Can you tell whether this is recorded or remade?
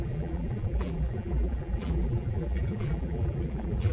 remade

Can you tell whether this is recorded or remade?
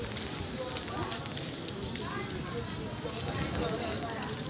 recorded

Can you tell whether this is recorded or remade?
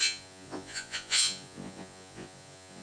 remade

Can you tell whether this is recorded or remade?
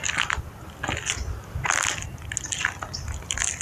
recorded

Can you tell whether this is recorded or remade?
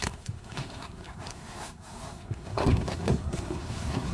remade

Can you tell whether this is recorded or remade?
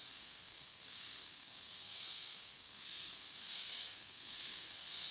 remade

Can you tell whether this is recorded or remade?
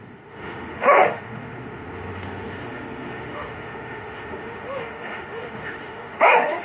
remade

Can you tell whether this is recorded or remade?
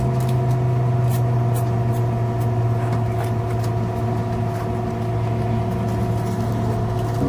recorded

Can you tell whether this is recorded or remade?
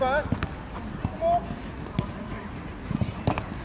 recorded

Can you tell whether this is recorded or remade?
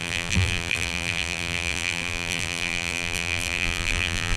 remade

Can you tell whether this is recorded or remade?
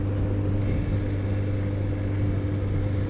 recorded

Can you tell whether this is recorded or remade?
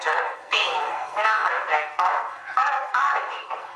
remade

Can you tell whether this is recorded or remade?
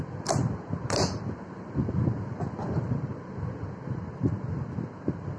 recorded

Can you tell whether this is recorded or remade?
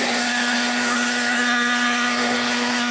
remade